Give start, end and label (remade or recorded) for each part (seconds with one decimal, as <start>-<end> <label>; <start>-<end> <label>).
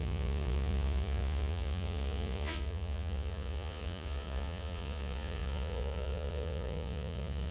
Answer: 0.0-7.5 remade